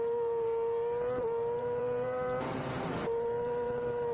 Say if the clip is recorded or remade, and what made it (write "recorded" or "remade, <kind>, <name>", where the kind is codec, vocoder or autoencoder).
remade, vocoder, BigVGAN v2